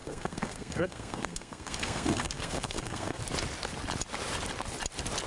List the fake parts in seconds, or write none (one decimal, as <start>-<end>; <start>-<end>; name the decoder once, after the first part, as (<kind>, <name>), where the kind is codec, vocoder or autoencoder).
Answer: 0.0-3.2 (codec, SNAC)